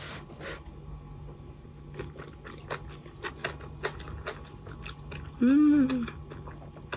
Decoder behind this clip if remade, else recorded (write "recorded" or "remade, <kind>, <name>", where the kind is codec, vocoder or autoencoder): recorded